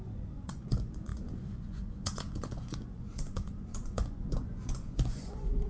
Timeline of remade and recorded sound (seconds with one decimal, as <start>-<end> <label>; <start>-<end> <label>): 0.0-5.7 remade